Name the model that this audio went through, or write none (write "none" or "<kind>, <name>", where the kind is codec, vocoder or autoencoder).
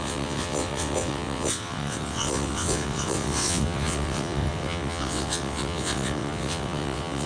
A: vocoder, WaveNeXt